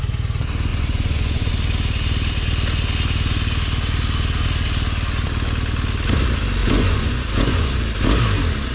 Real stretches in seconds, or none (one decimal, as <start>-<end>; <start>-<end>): 0.0-0.7; 1.5-6.6; 7.7-8.7

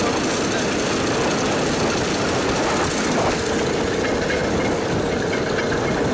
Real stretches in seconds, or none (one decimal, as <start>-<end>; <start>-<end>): 0.0-6.1

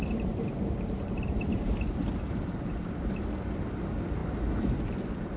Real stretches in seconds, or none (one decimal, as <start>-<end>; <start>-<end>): 3.1-4.2

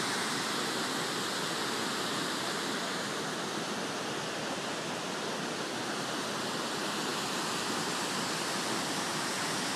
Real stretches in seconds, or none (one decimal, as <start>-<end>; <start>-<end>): 0.0-9.8